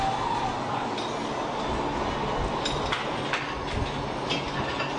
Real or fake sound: real